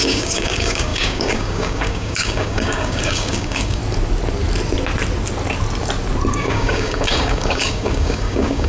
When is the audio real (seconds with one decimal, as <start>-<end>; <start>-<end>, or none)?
3.8-6.3